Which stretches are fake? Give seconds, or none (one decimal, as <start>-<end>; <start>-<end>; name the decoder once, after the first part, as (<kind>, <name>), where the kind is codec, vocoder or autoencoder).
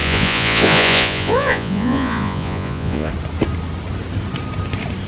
0.0-3.1 (vocoder, Vocos)